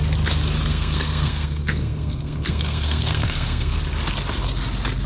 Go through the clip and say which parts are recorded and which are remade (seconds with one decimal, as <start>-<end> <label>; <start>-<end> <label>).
0.0-0.7 recorded; 0.7-3.8 remade; 3.8-5.1 recorded